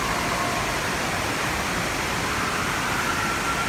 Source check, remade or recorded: recorded